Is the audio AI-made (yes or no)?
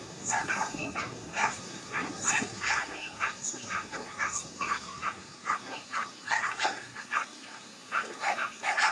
yes